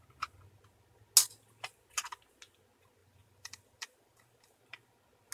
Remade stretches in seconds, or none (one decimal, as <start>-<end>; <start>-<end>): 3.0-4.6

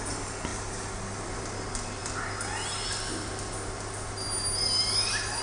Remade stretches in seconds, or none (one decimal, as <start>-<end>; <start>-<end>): none

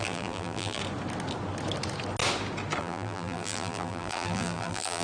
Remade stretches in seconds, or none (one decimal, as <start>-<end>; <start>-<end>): 0.0-0.8; 2.8-5.0

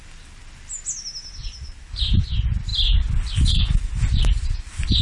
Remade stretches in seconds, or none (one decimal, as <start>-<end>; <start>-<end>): 1.4-2.0

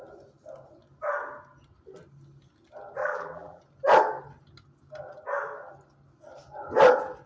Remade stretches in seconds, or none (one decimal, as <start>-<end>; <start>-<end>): 3.0-3.6

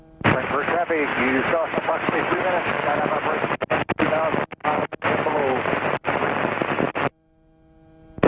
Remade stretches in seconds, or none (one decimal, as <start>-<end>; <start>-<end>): 1.1-4.1; 4.6-6.9

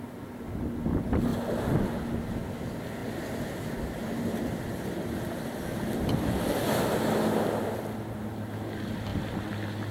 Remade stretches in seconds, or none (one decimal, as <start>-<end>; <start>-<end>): 3.0-6.8